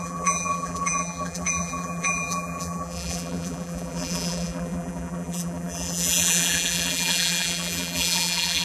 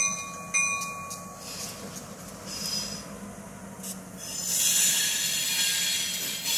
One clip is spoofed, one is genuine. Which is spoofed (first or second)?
first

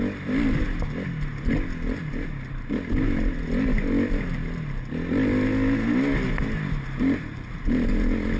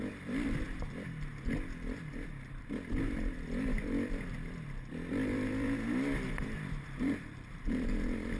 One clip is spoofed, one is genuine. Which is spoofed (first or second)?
second